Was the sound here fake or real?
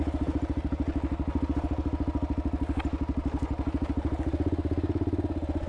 real